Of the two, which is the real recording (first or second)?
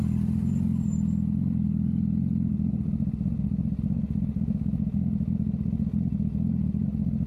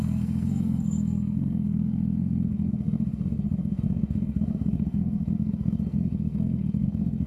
first